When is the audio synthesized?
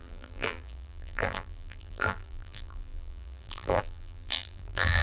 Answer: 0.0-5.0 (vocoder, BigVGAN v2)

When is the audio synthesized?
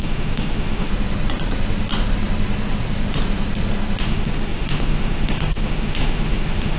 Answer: 0.0-0.9 (autoencoder, DAC-VAE); 4.0-6.8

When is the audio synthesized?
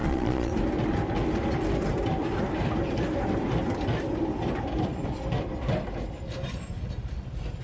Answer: 0.0-0.5 (vocoder, Vocos)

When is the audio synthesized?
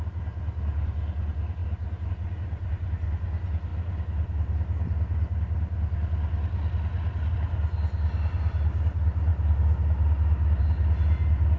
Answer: none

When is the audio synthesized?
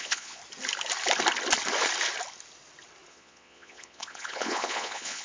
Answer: 0.0-0.4 (vocoder, Vocos); 3.1-5.2